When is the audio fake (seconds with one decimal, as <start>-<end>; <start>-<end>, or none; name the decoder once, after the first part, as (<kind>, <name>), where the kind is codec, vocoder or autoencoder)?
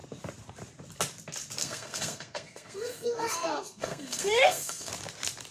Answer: 1.6-4.9 (codec, SNAC)